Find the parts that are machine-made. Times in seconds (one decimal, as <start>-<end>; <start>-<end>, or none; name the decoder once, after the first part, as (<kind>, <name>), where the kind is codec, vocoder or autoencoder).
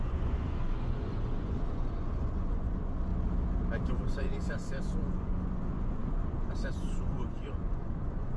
0.0-3.1 (vocoder, Vocos); 3.9-8.4